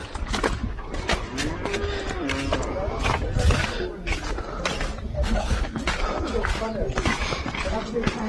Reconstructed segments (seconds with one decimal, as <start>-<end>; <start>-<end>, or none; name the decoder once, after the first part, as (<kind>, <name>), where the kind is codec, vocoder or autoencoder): 5.1-5.8 (codec, SNAC)